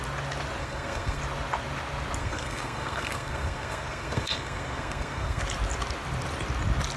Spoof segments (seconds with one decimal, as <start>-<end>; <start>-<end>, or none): 0.6-1.2; 2.2-5.4